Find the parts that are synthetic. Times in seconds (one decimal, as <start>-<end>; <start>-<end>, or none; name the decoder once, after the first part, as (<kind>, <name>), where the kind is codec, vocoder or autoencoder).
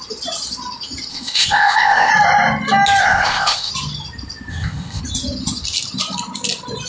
1.1-2.1 (codec, ZipCodec); 3.0-3.7; 4.5-5.0